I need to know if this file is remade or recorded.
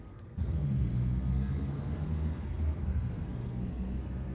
remade